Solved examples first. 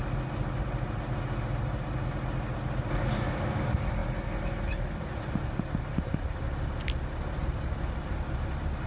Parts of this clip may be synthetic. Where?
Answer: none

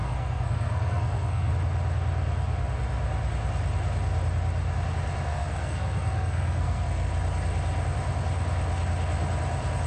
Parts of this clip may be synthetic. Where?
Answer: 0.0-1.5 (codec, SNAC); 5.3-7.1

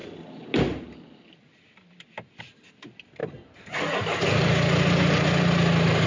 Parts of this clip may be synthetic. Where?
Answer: none

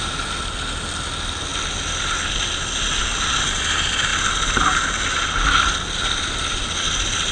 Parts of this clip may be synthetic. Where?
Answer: 0.0-1.5 (vocoder, BigVGAN v2); 3.0-4.1; 5.9-7.3

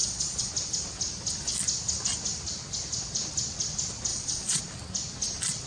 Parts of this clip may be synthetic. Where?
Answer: 0.0-0.5 (vocoder, Vocos); 4.1-4.6